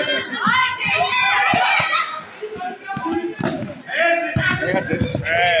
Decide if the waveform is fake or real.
real